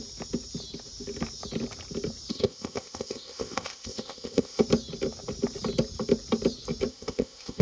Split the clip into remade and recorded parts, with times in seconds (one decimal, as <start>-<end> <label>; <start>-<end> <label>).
0.0-2.3 recorded; 2.3-4.6 remade; 4.6-6.9 recorded; 6.9-7.6 remade